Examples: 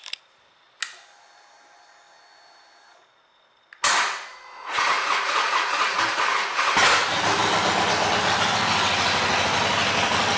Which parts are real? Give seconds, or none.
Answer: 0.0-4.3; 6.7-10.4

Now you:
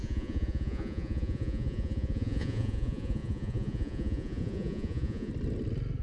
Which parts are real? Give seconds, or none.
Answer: 5.3-6.0

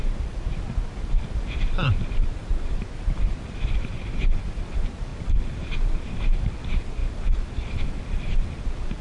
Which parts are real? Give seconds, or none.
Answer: none

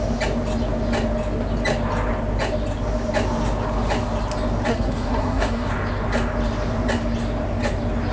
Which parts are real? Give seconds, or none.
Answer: 0.0-4.7; 5.7-8.1

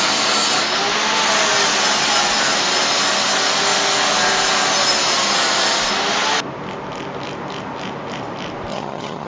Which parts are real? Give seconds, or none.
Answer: 0.0-8.7

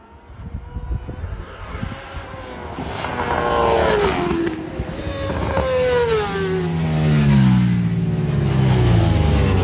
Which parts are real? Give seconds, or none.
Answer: 0.0-1.2; 1.8-9.6

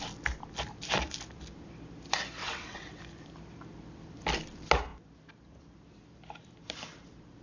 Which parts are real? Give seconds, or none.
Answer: 0.0-2.4; 3.0-7.4

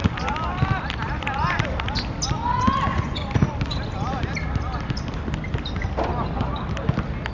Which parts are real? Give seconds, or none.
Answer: 0.0-2.9; 3.5-7.3